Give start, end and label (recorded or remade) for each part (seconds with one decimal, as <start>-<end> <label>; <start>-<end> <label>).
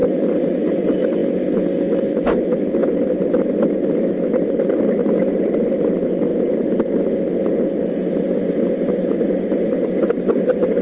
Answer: 0.0-1.2 remade; 1.2-2.1 recorded; 2.1-6.3 remade; 6.3-10.8 recorded